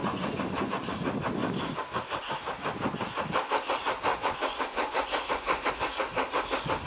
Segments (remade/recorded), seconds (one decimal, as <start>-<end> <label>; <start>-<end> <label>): 0.0-0.7 remade; 0.7-4.1 recorded; 4.1-5.7 remade; 5.7-6.9 recorded